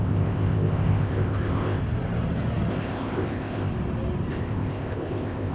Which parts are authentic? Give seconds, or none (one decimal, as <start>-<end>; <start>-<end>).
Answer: 1.8-2.7; 3.7-4.3